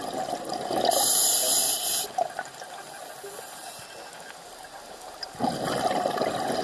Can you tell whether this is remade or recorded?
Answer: recorded